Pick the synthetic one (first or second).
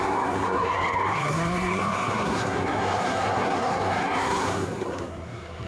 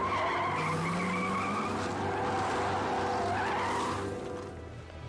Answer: first